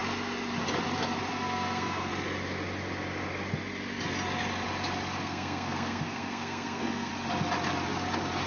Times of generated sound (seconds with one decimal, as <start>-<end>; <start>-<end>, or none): 1.3-2.1; 5.2-7.1